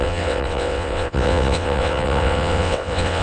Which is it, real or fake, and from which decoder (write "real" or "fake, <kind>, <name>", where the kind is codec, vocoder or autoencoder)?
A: fake, vocoder, WaveNeXt